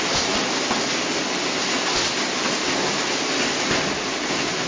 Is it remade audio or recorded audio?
recorded